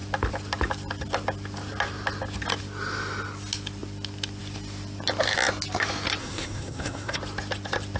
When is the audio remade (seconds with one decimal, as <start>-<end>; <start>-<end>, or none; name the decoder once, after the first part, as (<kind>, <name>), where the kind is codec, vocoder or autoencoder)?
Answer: 6.2-7.2 (codec, SNAC)